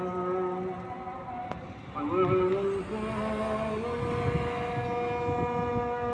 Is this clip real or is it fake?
real